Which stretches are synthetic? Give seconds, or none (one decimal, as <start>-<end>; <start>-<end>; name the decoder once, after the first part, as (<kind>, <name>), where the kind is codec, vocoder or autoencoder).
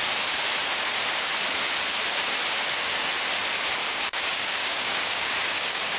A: 3.8-6.0 (codec, DAC)